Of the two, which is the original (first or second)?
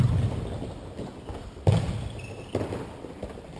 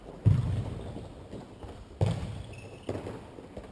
second